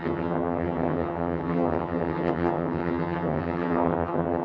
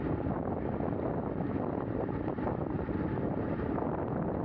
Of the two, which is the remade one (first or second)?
first